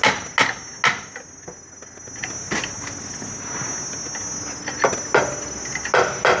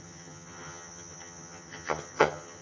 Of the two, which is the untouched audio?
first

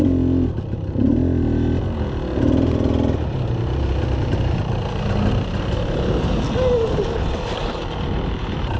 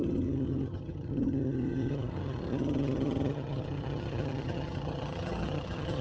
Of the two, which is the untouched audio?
first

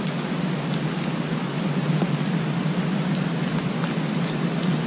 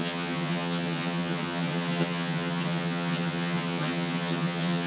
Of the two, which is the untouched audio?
first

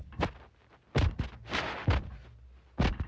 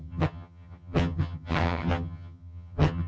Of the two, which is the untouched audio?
first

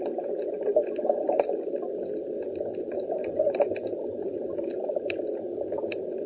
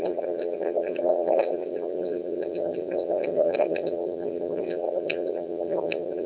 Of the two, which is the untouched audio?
first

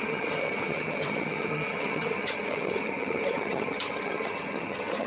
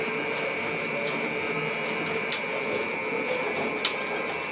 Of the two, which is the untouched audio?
second